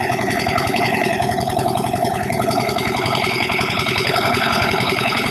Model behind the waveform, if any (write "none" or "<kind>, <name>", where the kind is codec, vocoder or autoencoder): codec, HILCodec